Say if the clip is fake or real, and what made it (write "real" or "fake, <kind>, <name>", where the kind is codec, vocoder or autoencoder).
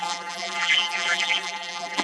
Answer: fake, vocoder, BigVGAN v2